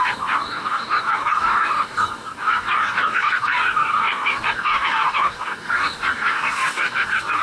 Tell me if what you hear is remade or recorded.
remade